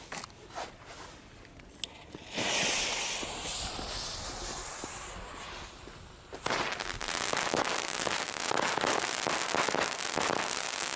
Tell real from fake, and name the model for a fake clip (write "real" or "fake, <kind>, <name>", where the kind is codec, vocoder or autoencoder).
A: real